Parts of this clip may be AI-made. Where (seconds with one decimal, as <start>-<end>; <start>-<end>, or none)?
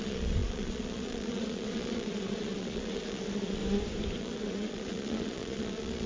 0.0-3.6; 4.2-6.1